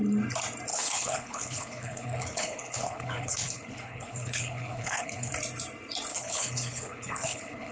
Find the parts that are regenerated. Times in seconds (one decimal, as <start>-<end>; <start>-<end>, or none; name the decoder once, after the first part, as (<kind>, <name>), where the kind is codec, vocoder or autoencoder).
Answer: 0.7-5.3 (codec, HILCodec); 6.1-7.7